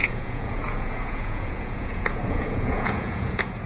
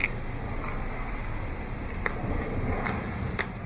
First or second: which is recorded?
second